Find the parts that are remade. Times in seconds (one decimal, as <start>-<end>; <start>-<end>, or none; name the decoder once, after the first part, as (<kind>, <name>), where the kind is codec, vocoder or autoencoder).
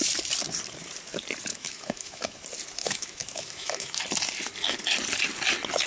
1.5-2.4 (autoencoder, DAC-VAE); 2.8-4.0